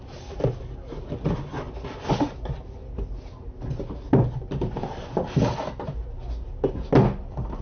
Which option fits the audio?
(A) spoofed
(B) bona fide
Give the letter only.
B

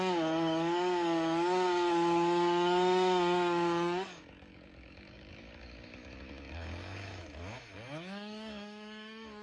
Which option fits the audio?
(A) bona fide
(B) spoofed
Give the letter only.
B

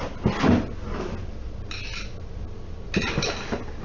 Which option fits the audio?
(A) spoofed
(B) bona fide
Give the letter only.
B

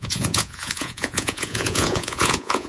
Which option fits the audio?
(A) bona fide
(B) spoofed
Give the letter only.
B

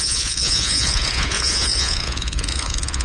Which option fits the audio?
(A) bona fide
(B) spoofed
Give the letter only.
B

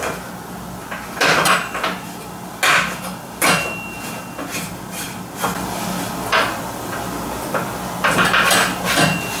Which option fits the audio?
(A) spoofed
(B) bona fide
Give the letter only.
B